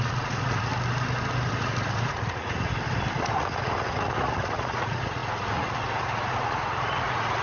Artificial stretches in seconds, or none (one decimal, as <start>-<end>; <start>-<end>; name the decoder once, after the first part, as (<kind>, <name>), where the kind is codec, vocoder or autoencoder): 0.0-0.7 (vocoder, Vocos); 1.5-2.7; 3.2-7.4